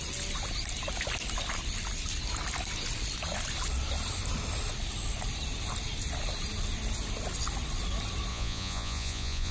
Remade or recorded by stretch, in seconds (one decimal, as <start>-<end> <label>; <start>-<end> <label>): 0.0-8.3 recorded; 8.3-9.5 remade